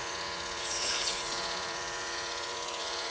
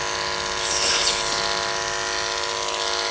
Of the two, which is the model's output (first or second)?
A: first